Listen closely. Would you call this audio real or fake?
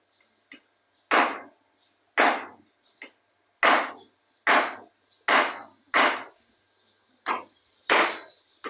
real